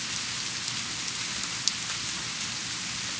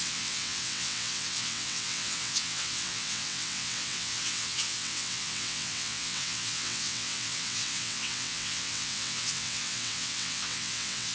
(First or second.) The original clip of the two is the first